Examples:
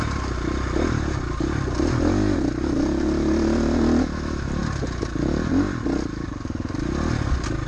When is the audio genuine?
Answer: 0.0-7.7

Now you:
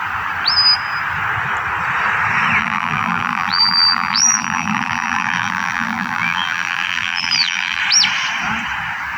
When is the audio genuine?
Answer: 0.0-2.6; 7.8-9.2

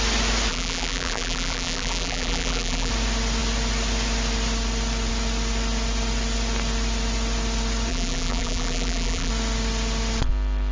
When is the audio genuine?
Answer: 0.0-0.5; 2.9-7.9; 9.3-10.7

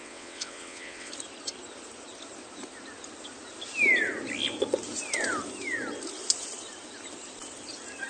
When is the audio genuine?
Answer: 1.1-8.1

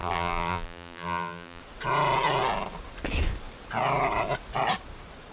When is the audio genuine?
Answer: 1.6-5.3

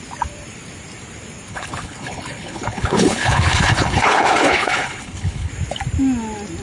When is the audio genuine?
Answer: 0.0-1.5; 5.5-6.6

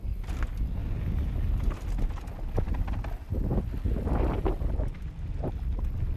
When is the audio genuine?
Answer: 0.0-6.2